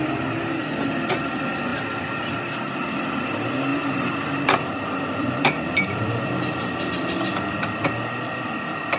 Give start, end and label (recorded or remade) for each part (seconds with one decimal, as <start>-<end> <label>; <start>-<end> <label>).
0.0-3.7 recorded; 3.7-6.9 remade; 6.9-9.0 recorded